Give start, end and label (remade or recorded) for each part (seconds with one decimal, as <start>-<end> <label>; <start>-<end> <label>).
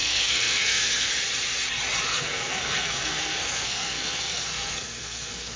0.0-1.1 remade; 1.1-2.1 recorded; 2.1-5.6 remade